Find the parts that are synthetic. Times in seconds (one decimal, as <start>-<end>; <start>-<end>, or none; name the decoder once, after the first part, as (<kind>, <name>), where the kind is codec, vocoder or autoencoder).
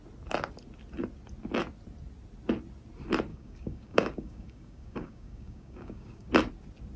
3.3-6.3 (codec, DAC)